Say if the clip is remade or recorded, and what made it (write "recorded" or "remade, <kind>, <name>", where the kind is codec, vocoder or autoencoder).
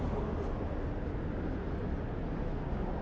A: recorded